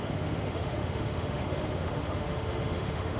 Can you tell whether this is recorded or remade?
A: remade